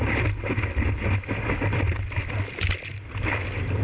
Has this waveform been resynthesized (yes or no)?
no